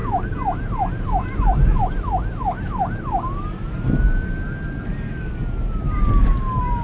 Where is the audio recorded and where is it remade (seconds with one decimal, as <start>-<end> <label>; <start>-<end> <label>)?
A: 0.0-6.8 recorded